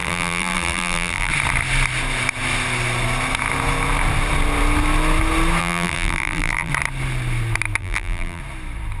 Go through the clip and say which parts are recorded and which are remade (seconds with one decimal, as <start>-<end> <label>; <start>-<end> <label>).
0.0-1.3 remade; 1.3-5.6 recorded; 5.6-6.7 remade; 6.7-7.8 recorded; 7.8-8.4 remade; 8.4-9.0 recorded